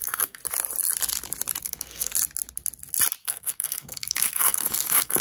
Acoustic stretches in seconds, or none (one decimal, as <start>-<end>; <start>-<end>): 0.4-1.6; 2.1-3.2